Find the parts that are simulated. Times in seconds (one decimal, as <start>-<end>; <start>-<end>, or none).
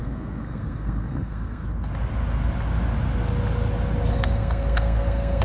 0.0-1.6; 4.1-5.4